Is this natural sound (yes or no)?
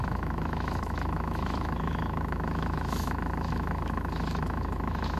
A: no